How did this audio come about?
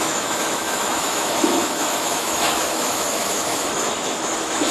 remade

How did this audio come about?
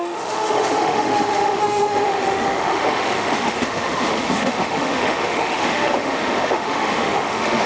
remade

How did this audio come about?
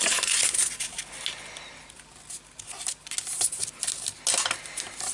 recorded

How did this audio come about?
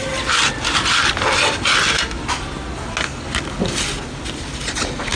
recorded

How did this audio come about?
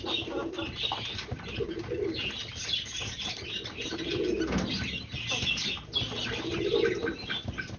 recorded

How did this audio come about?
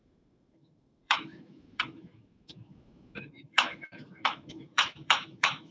remade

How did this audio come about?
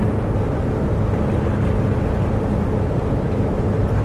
recorded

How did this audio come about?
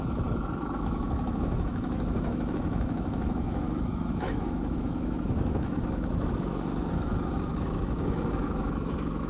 remade